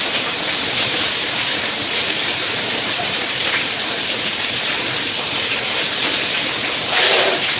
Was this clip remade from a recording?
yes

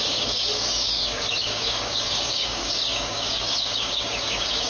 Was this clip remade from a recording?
yes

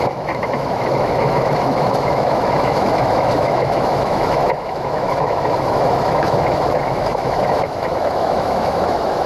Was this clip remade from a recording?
yes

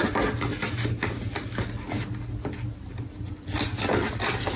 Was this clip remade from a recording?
no